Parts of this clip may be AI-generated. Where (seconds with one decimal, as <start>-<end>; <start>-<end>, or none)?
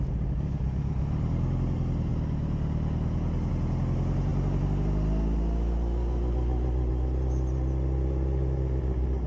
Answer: none